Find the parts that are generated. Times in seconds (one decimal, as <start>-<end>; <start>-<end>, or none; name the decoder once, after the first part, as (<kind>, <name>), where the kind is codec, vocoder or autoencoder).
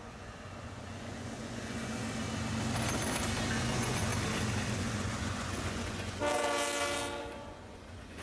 0.0-2.0 (vocoder, Vocos); 3.5-4.1; 4.7-6.2; 7.2-8.2